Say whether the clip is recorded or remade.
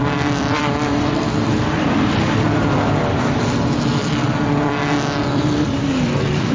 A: remade